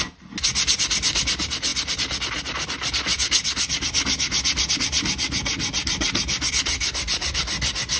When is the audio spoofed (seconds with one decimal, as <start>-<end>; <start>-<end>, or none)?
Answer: none